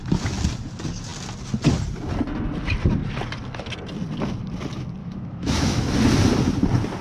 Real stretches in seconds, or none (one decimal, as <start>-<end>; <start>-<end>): 0.0-5.0; 5.9-7.0